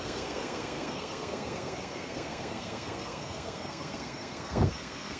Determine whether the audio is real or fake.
fake